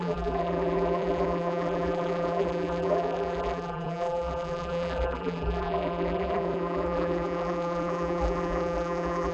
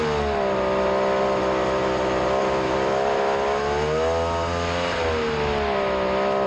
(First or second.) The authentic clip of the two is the second